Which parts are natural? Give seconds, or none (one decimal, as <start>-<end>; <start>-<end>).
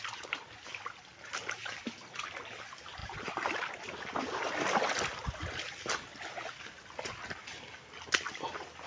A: 0.0-8.9